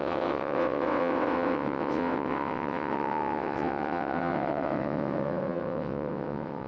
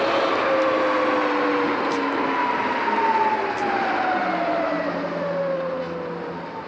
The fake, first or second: first